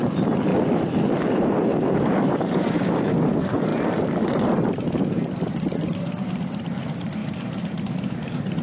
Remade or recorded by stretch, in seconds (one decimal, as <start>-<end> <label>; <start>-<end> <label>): 0.0-0.5 remade; 0.5-1.1 recorded; 1.1-3.7 remade; 3.7-5.1 recorded; 5.1-8.6 remade